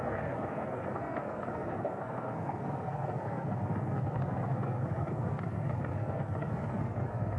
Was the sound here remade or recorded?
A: remade